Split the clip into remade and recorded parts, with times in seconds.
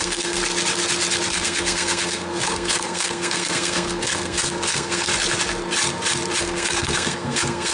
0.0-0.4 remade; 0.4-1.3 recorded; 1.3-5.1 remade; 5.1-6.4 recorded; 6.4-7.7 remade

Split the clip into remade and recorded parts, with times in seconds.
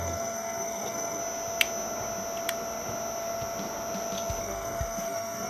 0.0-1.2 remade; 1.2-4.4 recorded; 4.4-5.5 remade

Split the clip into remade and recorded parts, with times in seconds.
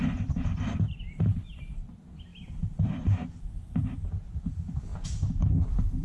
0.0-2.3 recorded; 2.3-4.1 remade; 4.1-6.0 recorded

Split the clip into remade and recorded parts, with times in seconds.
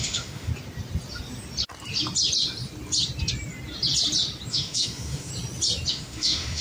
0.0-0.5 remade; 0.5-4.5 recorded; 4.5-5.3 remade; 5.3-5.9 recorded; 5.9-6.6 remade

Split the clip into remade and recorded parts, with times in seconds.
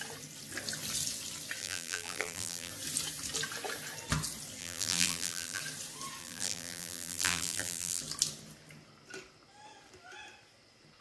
0.0-1.6 recorded; 1.6-2.7 remade; 2.7-4.6 recorded; 4.6-5.6 remade; 5.6-6.2 recorded; 6.2-8.0 remade; 8.0-11.0 recorded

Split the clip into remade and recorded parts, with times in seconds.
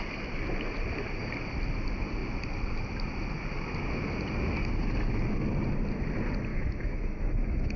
0.0-6.5 recorded; 6.5-7.8 remade